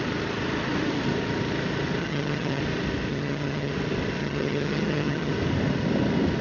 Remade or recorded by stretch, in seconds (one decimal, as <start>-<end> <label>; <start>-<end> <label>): 0.0-2.0 recorded; 2.0-2.6 remade; 2.6-3.1 recorded; 3.1-3.7 remade; 3.7-4.2 recorded; 4.2-5.3 remade; 5.3-6.4 recorded